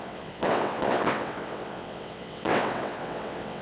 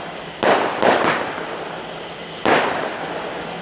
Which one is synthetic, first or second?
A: first